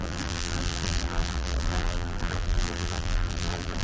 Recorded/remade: remade